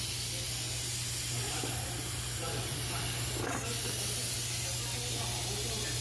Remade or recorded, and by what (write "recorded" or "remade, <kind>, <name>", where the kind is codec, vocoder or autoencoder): recorded